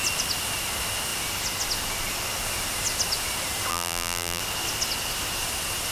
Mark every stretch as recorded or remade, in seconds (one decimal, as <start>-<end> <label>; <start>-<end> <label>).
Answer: 0.0-3.7 recorded; 3.7-4.4 remade; 4.4-5.9 recorded